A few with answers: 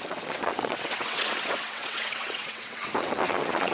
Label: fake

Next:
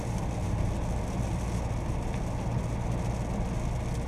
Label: real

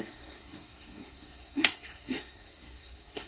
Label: fake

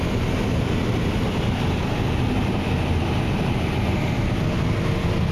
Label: real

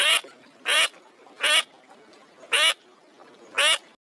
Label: real